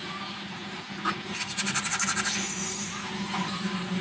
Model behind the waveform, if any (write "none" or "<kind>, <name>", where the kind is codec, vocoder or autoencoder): none